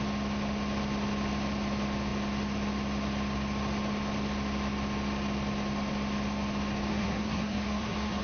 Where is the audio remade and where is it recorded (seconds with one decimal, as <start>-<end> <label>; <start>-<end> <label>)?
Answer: 0.0-6.9 recorded; 6.9-8.2 remade